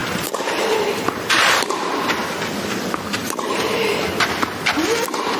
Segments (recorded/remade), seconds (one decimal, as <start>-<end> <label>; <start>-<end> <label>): 0.0-2.1 remade; 2.1-3.2 recorded; 3.2-4.0 remade; 4.0-5.4 recorded